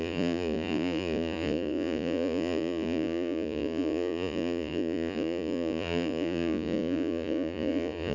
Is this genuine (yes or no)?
no